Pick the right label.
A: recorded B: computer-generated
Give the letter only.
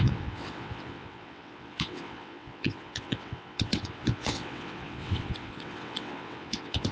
B